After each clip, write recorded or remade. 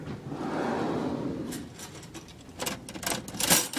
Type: recorded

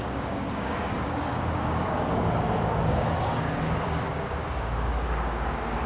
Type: remade